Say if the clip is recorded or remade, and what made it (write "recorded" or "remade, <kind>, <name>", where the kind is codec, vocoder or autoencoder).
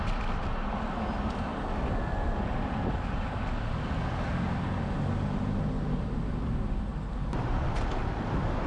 recorded